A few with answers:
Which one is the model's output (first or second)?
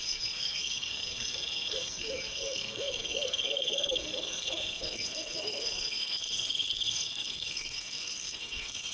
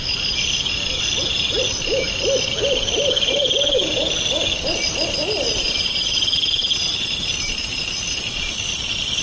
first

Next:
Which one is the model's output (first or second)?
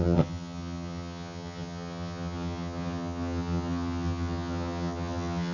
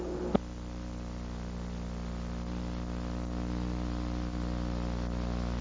first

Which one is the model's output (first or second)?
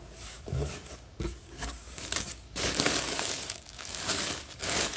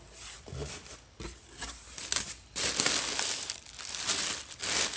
first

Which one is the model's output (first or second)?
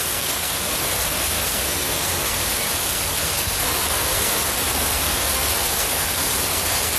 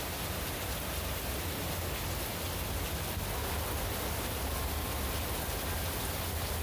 first